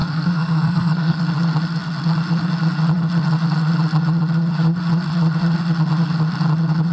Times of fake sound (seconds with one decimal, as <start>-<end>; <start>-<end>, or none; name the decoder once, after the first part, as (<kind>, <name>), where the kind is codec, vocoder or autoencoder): 0.0-1.2 (codec, SNAC)

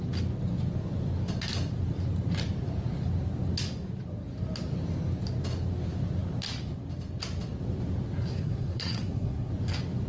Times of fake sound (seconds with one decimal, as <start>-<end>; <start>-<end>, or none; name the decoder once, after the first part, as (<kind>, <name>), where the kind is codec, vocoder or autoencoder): 8.3-9.5 (codec, SNAC)

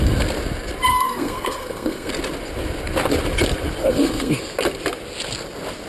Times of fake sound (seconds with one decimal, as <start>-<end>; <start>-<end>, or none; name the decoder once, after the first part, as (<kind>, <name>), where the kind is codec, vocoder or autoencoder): 0.9-2.1 (codec, SNAC); 3.8-4.4

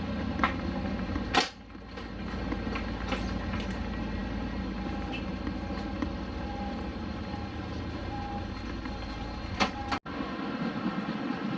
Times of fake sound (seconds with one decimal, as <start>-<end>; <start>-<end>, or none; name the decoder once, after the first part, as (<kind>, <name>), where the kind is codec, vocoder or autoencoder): none

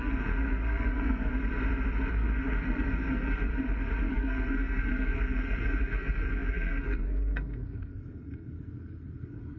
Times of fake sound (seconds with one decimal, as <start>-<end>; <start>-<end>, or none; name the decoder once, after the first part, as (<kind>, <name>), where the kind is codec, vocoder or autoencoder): 0.0-1.3 (codec, SNAC); 2.1-3.5; 4.1-9.6

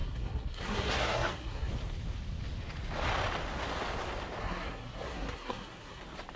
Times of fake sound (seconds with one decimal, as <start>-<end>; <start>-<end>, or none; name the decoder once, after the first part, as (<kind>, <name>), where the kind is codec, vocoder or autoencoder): 0.0-1.7 (codec, SNAC); 4.4-6.0